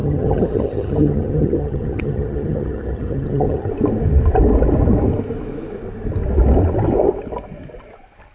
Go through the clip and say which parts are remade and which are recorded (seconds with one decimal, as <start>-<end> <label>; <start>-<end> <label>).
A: 0.0-3.7 remade; 3.7-8.3 recorded